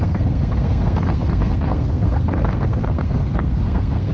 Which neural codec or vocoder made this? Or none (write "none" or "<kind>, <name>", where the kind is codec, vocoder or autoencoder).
codec, SNAC